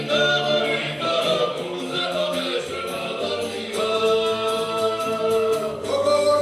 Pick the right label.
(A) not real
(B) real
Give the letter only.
A